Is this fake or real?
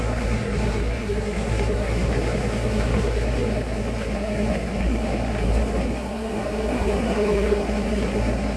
fake